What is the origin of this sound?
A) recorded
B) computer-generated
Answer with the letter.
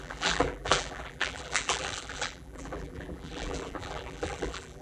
B